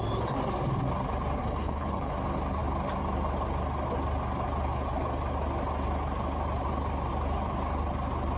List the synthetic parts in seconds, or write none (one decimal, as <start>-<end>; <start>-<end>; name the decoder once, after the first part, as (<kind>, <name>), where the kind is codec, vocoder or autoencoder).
1.4-2.1 (codec, HILCodec)